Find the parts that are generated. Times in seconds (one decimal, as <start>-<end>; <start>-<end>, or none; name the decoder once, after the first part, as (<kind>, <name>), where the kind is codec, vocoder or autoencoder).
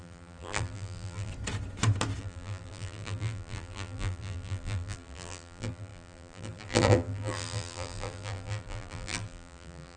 0.0-1.3 (vocoder, BigVGAN v2); 2.2-10.0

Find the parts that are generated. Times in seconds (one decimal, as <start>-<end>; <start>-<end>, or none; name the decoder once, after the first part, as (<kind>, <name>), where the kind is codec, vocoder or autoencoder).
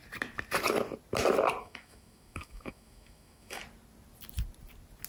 1.6-3.6 (autoencoder, DAC-VAE)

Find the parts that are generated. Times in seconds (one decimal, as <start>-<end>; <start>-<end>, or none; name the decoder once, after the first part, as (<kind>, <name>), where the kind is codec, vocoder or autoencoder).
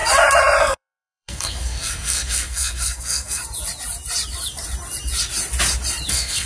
0.6-3.4 (codec, SNAC); 6.1-6.5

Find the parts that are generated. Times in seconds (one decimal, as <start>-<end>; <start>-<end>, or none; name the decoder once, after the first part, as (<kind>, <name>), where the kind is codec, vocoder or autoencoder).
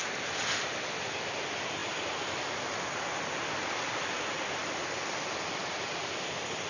none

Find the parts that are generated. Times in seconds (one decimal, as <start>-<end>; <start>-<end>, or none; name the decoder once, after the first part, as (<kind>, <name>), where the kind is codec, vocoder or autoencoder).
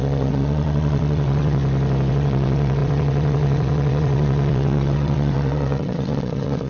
0.0-1.6 (vocoder, WaveNeXt); 2.1-6.7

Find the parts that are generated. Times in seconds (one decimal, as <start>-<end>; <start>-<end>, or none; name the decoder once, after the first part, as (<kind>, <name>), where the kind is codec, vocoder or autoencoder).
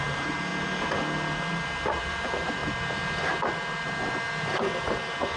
0.0-0.5 (vocoder, BigVGAN v2); 2.0-2.6; 4.4-5.4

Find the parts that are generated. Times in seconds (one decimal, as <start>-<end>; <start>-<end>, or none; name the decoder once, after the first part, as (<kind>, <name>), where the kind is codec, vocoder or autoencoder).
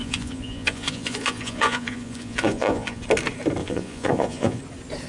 0.0-3.0 (vocoder, Vocos); 3.6-4.6